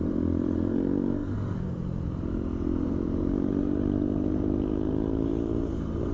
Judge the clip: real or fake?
fake